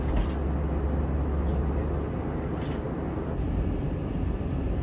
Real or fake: real